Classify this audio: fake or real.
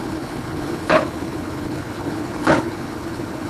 fake